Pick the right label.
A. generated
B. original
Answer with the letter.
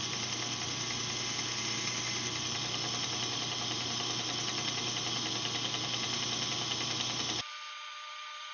B